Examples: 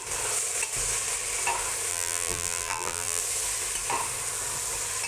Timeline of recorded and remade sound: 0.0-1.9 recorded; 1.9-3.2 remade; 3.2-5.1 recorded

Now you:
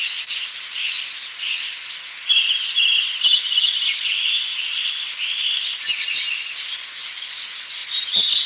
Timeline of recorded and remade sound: 0.0-3.3 recorded; 3.3-4.7 remade; 4.7-8.5 recorded